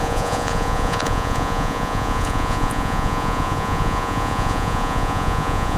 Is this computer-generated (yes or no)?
yes